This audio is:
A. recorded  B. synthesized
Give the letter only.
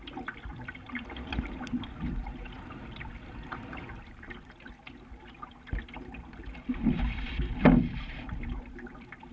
B